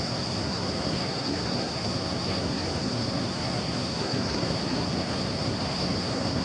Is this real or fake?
fake